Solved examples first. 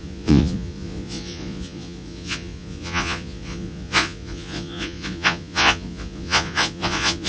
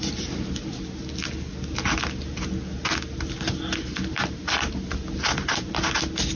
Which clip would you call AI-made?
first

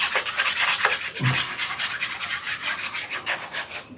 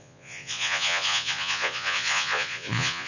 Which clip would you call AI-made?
second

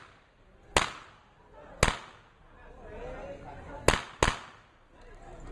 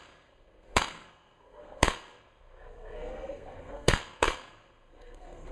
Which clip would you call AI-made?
second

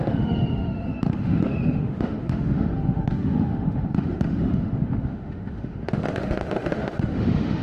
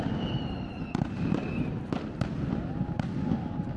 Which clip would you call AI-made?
first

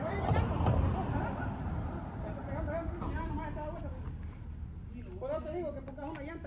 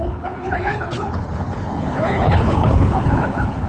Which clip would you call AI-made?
second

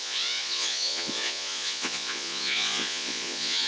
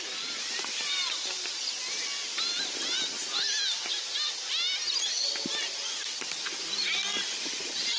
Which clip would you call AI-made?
first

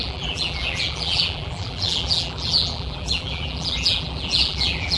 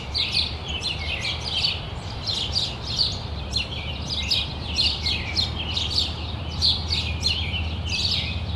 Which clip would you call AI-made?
first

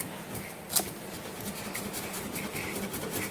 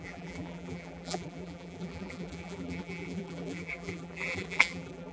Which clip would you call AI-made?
second